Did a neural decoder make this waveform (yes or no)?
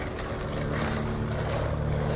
no